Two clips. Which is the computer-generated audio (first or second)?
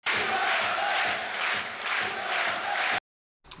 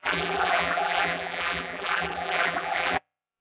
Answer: second